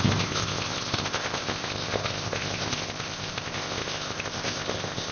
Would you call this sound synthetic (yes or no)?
yes